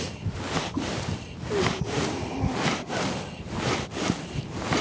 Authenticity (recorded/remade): recorded